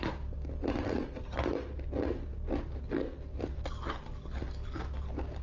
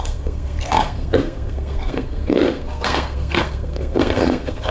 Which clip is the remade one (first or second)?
second